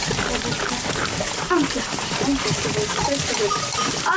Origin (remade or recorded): recorded